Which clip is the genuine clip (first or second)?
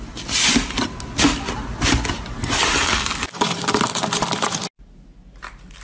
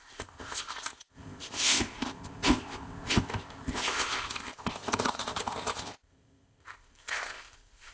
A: first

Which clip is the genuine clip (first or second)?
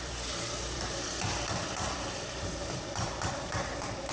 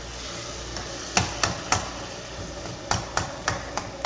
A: second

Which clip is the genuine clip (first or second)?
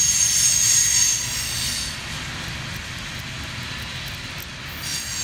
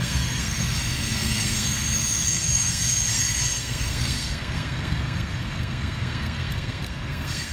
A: first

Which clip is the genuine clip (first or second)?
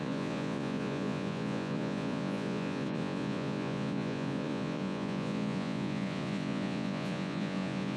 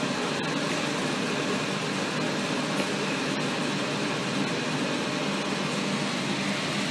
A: second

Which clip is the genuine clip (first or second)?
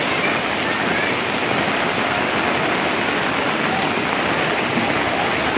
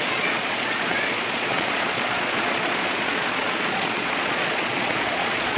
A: first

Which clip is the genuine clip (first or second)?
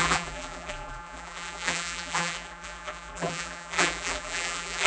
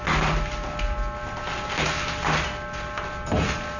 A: second